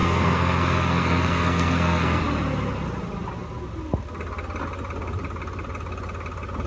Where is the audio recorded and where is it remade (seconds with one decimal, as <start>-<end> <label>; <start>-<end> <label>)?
0.0-2.2 remade; 2.2-6.7 recorded